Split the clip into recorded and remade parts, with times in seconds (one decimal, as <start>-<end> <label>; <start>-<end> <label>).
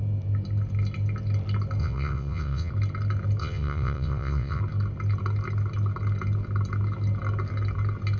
0.0-1.8 recorded; 1.8-2.7 remade; 2.7-3.4 recorded; 3.4-4.6 remade; 4.6-8.2 recorded